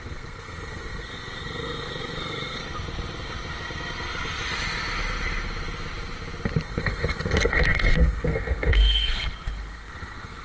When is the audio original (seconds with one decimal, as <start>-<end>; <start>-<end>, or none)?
2.6-6.6